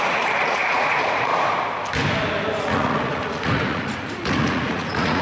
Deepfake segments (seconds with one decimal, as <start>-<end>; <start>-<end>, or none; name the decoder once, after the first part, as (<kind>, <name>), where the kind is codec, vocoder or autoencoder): 0.0-1.3 (vocoder, Vocos); 2.6-5.2